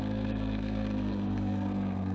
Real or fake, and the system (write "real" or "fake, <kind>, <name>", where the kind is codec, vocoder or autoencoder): fake, codec, SNAC